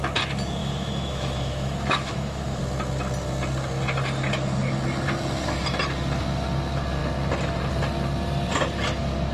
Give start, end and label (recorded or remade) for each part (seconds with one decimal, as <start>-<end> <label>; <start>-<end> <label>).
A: 0.0-0.6 recorded; 0.6-2.6 remade; 2.6-9.3 recorded